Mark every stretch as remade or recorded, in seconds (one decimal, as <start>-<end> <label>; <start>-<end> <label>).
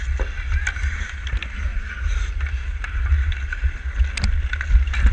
0.0-5.1 recorded